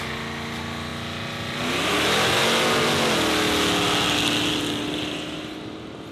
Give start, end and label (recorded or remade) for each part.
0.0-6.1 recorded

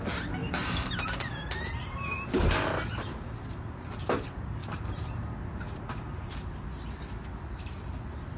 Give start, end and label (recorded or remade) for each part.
0.0-0.4 recorded; 0.4-2.3 remade; 2.3-4.6 recorded; 4.6-6.3 remade; 6.3-8.4 recorded

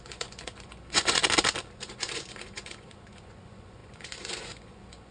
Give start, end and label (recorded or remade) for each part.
0.0-1.2 remade; 1.2-1.8 recorded; 1.8-5.1 remade